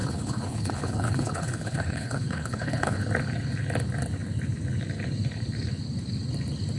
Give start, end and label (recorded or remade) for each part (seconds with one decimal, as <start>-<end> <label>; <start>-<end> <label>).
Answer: 0.0-3.0 remade; 3.0-6.8 recorded